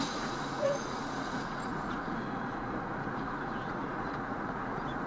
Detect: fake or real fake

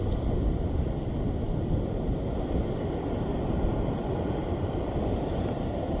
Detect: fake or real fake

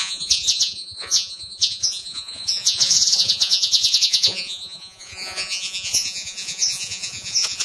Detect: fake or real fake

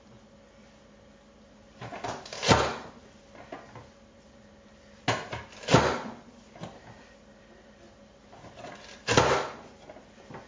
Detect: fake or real real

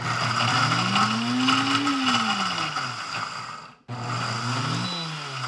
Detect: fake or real real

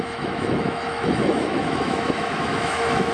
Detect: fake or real fake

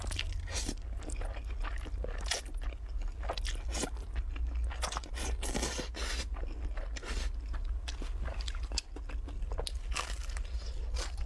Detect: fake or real real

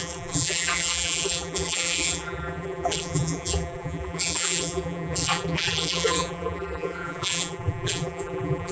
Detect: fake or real fake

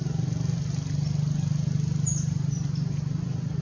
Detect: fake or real real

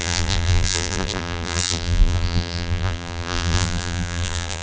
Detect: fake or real fake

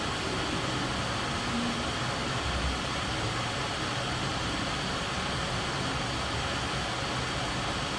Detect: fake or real real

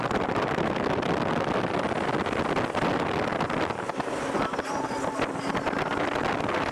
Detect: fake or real real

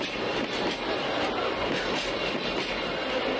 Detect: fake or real real